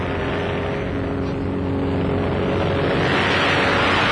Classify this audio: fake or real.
real